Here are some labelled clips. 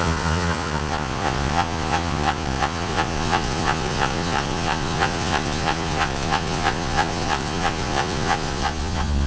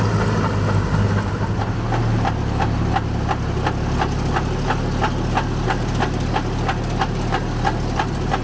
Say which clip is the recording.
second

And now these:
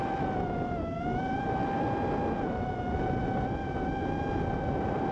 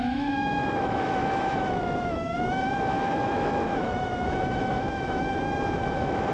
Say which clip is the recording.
first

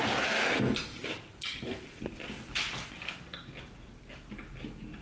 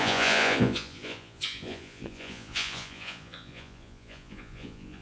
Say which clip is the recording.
first